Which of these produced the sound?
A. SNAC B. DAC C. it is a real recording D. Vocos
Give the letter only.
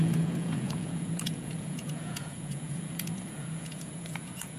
D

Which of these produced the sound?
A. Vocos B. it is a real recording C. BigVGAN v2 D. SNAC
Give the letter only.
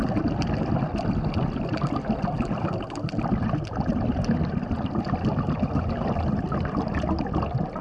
B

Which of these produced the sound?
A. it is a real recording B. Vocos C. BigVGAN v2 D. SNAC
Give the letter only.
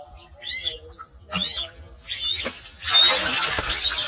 A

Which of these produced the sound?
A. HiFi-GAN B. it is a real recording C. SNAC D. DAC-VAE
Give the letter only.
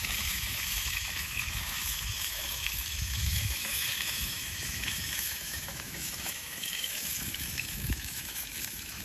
D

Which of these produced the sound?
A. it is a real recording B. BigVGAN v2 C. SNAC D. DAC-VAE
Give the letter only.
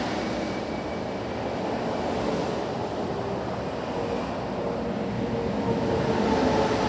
A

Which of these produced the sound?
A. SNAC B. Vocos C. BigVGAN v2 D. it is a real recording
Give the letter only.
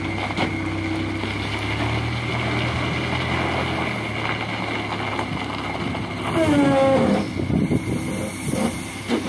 D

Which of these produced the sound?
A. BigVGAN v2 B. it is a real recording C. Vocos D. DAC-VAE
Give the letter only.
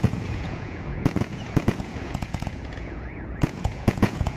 C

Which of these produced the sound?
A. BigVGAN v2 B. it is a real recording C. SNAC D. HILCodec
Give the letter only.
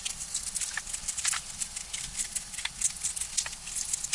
A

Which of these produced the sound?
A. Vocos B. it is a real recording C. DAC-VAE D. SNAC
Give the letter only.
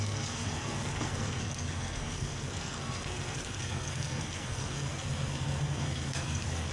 D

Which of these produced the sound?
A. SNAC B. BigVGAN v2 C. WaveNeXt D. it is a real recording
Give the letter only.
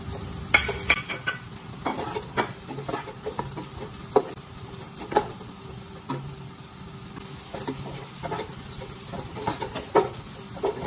D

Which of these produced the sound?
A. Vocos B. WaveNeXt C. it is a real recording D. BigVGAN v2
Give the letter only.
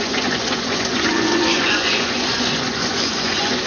A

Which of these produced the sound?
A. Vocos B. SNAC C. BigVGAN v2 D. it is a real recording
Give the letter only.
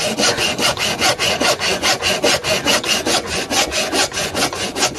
A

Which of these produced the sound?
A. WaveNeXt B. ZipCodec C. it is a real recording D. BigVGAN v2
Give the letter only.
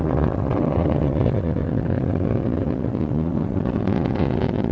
A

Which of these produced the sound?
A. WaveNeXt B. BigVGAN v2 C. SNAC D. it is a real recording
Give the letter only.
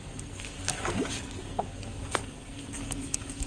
C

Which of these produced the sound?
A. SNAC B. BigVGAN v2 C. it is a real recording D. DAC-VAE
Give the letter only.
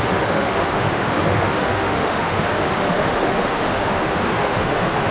D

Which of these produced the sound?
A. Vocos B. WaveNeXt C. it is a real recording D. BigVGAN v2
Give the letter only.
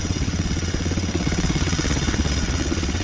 B